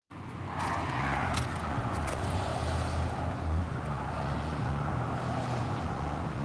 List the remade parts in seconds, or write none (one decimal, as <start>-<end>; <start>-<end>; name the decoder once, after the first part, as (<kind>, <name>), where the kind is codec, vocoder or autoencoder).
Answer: 0.0-2.5 (vocoder, Vocos); 3.3-4.9; 5.6-6.4